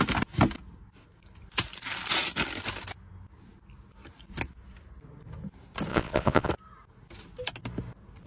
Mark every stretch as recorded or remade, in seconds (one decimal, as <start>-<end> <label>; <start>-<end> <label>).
0.0-5.9 recorded; 5.9-6.5 remade; 6.5-8.3 recorded